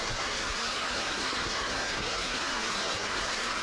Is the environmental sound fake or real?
fake